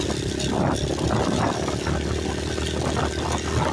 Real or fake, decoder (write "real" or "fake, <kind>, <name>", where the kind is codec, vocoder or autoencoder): real